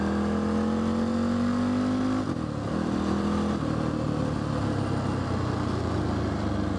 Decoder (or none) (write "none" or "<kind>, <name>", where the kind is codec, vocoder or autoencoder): none